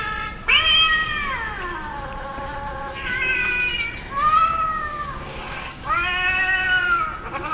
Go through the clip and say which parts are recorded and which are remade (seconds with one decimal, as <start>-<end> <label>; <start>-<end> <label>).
0.0-4.7 recorded; 4.7-7.0 remade; 7.0-7.5 recorded